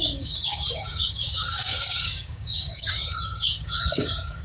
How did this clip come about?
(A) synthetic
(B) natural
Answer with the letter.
A